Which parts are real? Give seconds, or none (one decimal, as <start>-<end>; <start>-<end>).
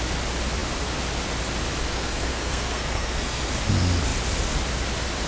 0.0-1.9; 3.5-5.3